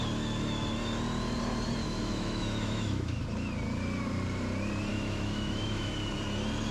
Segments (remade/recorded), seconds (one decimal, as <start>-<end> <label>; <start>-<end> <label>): 0.0-1.8 recorded; 1.8-3.2 remade; 3.2-4.9 recorded; 4.9-5.9 remade; 5.9-6.7 recorded